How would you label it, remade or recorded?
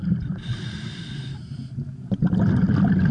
recorded